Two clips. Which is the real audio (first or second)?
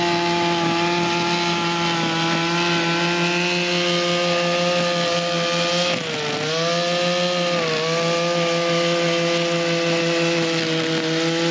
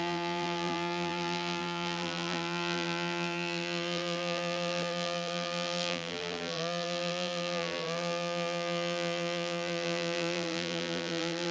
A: first